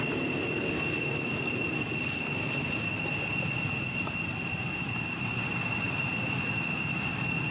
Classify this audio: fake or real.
fake